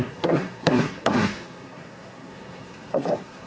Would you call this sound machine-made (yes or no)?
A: yes